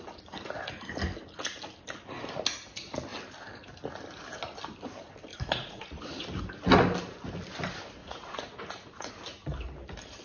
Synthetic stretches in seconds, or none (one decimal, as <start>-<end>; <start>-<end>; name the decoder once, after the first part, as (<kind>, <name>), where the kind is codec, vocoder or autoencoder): 5.3-6.0 (vocoder, Vocos); 8.0-9.1